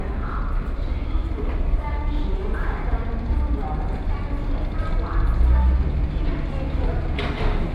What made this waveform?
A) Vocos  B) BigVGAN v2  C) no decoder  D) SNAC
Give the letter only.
C